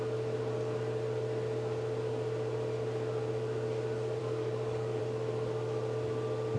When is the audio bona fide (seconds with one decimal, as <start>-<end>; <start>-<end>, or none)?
0.0-4.2; 5.0-6.6